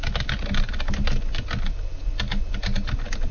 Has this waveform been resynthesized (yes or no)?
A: no